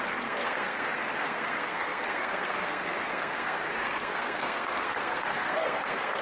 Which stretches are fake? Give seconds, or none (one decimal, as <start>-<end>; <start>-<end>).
0.0-6.2